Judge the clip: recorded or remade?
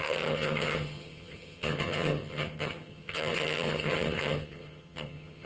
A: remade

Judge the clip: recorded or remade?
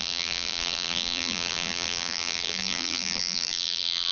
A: remade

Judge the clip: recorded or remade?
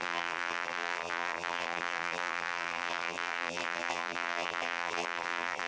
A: remade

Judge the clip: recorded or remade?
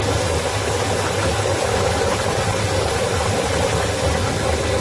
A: recorded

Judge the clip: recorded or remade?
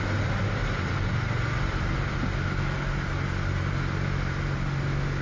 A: recorded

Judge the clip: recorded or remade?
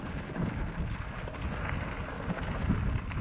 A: recorded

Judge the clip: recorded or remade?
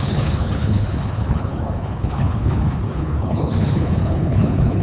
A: remade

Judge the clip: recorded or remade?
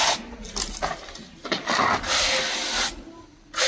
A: recorded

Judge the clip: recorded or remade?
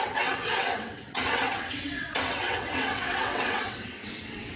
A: remade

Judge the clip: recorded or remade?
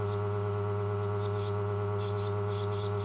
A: recorded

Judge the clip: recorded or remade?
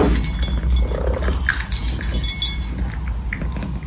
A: recorded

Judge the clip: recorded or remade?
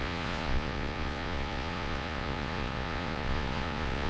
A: remade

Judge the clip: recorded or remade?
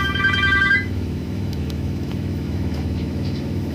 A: remade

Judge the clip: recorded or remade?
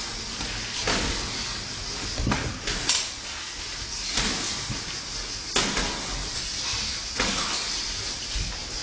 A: recorded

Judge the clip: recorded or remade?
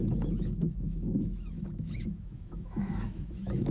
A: remade